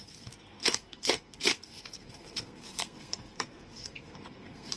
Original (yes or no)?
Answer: no